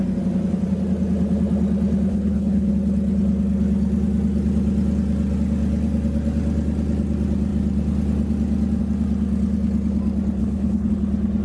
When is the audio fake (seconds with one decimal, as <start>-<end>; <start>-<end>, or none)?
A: 2.1-2.7; 10.4-10.9